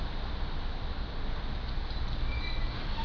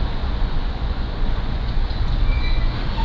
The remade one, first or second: second